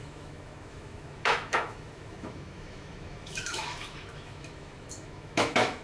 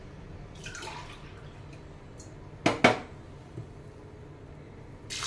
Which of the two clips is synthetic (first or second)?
first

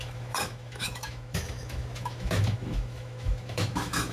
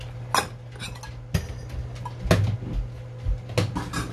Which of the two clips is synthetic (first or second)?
first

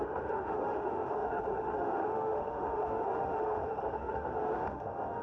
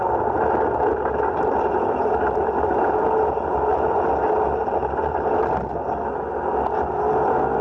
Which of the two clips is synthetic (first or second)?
first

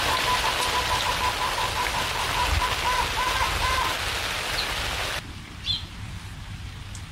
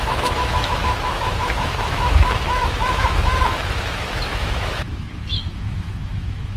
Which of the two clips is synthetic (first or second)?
second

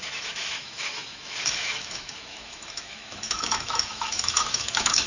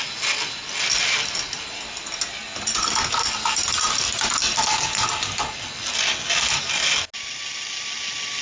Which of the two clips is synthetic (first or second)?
first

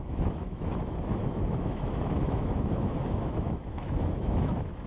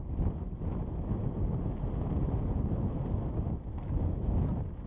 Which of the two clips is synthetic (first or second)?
first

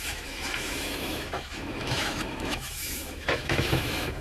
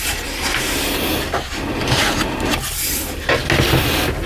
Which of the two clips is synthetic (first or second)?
first